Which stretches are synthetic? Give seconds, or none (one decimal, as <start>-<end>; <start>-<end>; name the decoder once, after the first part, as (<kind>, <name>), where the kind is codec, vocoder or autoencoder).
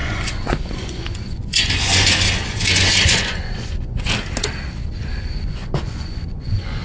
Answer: 0.0-4.1 (vocoder, Vocos); 4.9-6.8